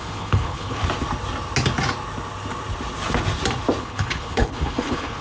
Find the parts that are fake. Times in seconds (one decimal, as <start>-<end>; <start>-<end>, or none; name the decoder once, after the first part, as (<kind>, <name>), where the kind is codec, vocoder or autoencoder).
0.0-0.8 (codec, HILCodec); 3.8-5.2